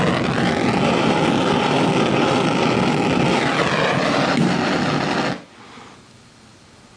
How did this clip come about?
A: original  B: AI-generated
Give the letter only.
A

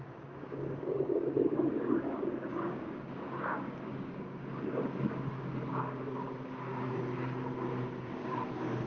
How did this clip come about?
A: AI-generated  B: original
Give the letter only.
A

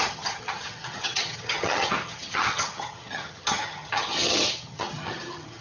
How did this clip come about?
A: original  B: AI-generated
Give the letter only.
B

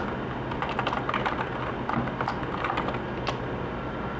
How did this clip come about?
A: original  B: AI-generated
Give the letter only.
A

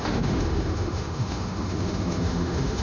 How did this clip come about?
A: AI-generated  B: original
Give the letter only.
A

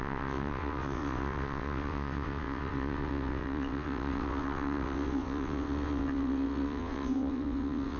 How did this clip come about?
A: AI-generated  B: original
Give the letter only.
A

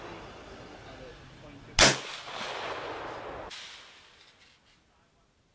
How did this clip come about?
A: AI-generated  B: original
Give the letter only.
B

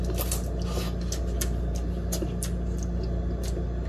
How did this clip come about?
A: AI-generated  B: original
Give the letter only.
B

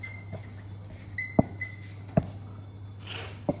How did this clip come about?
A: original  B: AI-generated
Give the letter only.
A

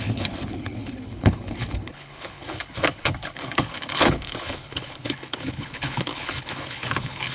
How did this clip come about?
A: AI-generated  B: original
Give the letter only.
A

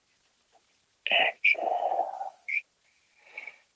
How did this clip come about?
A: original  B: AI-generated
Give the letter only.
A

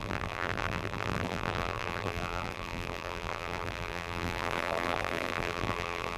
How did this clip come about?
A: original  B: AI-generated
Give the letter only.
B